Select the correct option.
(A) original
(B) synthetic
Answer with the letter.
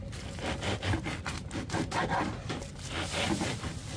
A